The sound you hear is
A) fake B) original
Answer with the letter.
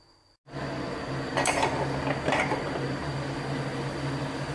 B